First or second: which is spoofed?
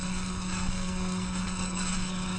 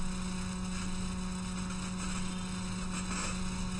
first